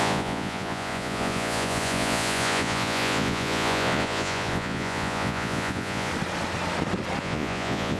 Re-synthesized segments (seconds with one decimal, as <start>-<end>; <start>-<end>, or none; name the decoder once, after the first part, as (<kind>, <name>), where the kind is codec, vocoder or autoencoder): 0.0-6.1 (vocoder, Vocos); 7.2-8.0